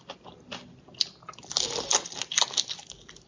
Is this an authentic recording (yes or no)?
yes